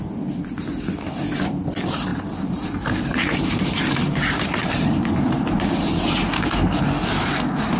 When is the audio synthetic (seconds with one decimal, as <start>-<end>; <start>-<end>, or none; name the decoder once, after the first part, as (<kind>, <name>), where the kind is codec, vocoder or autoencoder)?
2.1-6.8 (vocoder, BigVGAN v2)